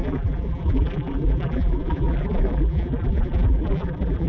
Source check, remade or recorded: remade